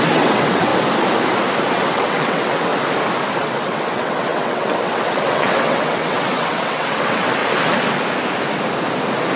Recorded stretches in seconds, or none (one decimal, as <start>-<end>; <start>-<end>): 0.7-1.7; 2.7-3.4; 7.4-9.4